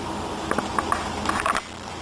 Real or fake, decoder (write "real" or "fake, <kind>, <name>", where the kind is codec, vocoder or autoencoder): real